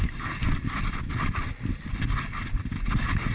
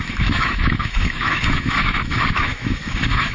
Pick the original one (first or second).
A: first